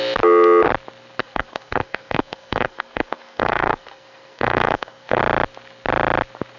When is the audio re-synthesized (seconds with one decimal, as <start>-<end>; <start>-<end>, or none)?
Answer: 1.2-5.2

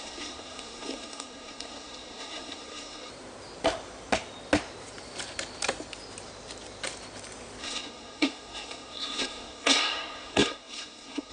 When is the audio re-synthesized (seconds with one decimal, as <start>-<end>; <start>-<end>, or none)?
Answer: 0.0-3.1; 7.6-11.3

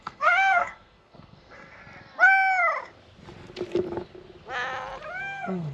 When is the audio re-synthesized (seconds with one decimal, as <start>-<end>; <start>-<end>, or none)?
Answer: 0.0-1.8; 5.2-5.7

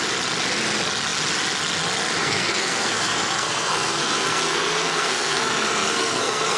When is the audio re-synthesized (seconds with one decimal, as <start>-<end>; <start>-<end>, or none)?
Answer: 2.2-6.6

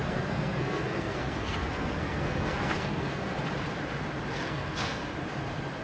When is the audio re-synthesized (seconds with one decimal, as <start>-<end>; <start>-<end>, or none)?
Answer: 0.0-3.3; 4.3-5.0